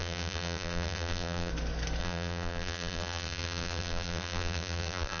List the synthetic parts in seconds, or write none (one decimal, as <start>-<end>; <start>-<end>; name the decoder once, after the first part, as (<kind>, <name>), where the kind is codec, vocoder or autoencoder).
0.0-1.5 (vocoder, BigVGAN v2); 2.0-5.2